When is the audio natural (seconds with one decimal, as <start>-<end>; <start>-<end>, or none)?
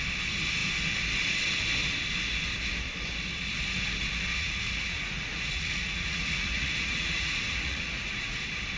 0.0-4.3; 8.4-8.8